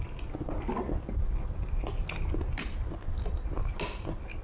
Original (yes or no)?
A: yes